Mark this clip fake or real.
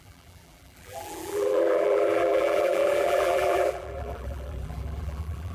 fake